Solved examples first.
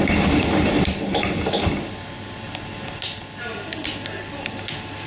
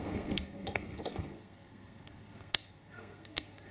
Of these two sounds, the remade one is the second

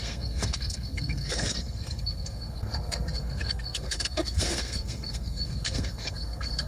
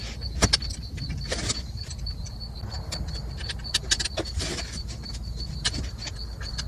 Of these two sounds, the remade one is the first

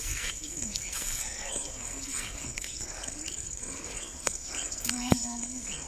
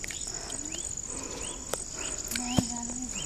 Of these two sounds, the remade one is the first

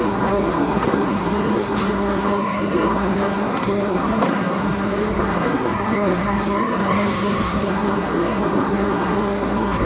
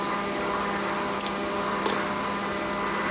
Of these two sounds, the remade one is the first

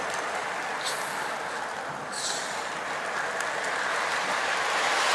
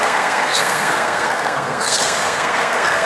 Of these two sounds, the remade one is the second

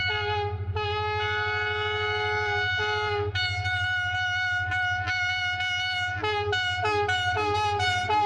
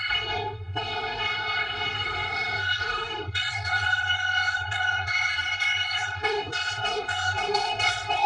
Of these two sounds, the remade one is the second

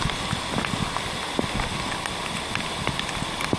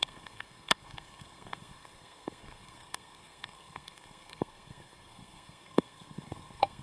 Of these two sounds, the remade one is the second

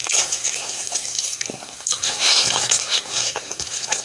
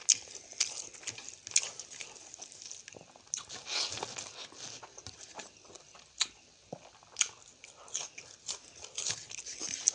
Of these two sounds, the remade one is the first